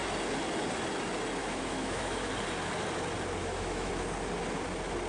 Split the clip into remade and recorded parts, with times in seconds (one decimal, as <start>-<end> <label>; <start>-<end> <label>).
0.0-1.4 recorded; 1.4-2.3 remade; 2.3-3.4 recorded; 3.4-3.9 remade; 3.9-5.1 recorded